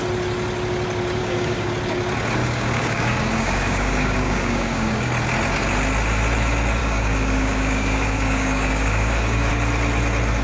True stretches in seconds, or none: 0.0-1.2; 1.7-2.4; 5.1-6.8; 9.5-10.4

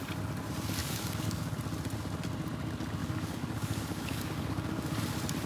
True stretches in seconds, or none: 0.0-0.8; 1.5-3.0; 5.0-5.5

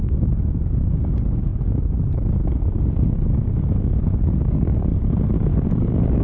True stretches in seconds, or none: 1.5-2.8; 4.9-5.7

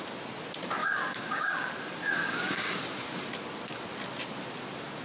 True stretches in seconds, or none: 0.0-0.8; 1.7-2.2; 2.8-5.0

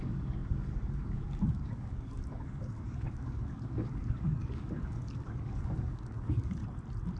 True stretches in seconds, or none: 6.6-7.2

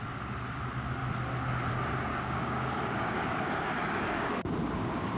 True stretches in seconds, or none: 0.0-2.1

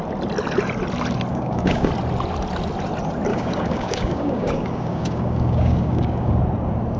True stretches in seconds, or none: 0.0-1.3; 1.9-3.3; 6.4-7.0

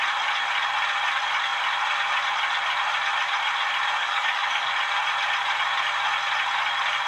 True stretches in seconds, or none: 0.0-4.0; 4.7-7.1